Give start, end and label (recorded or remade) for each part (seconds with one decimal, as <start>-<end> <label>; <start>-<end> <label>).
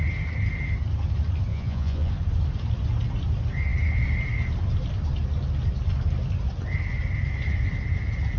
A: 0.0-1.5 recorded; 1.5-2.1 remade; 2.1-8.4 recorded